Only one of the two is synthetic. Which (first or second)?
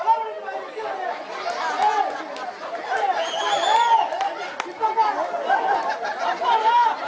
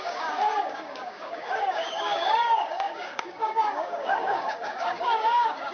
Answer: second